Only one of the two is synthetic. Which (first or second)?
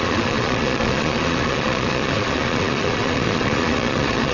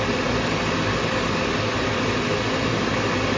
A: first